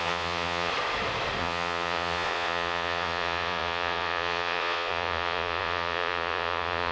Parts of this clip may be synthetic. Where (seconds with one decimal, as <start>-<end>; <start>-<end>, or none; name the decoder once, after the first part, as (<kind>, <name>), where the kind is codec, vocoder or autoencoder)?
0.0-0.7 (vocoder, Vocos); 1.4-6.9